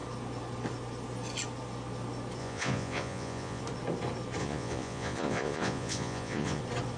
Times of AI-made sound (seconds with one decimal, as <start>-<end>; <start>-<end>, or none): 2.4-3.6; 4.4-6.6